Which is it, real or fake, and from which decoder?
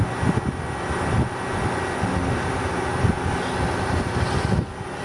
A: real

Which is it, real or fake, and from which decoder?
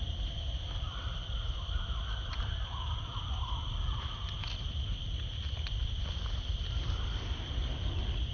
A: real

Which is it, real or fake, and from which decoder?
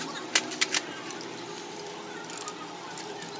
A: real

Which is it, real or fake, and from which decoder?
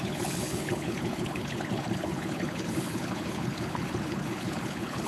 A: fake, codec, HILCodec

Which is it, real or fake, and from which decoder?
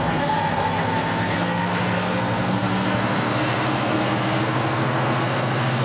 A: fake, codec, SNAC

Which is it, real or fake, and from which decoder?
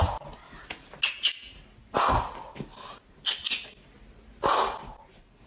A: real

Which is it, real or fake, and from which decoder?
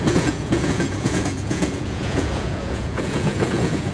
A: fake, vocoder, Vocos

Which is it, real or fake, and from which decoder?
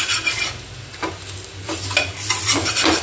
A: real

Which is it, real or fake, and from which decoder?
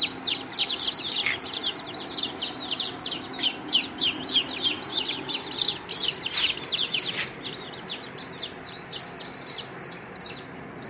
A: fake, vocoder, BigVGAN v2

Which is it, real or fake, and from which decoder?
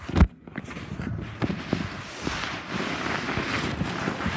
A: real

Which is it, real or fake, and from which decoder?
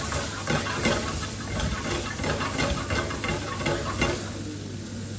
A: real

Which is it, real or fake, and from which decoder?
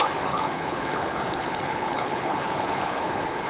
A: fake, codec, HILCodec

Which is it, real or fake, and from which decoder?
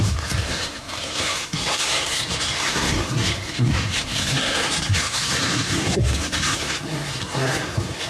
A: fake, codec, SNAC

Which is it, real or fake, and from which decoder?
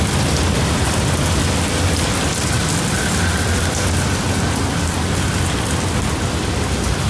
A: real